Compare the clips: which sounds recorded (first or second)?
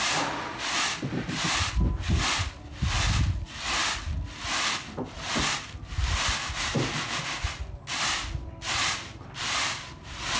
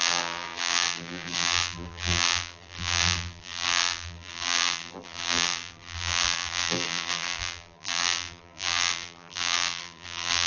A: first